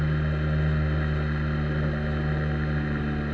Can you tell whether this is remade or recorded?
recorded